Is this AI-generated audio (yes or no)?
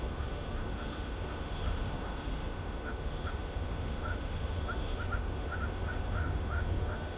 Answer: yes